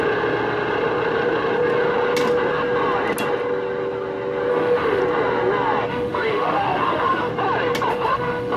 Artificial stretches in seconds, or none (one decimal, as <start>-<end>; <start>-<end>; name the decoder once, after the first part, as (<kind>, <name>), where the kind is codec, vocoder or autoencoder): 4.5-5.0 (autoencoder, DAC-VAE); 5.9-7.3; 7.9-8.6